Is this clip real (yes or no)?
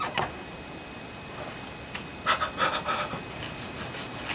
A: yes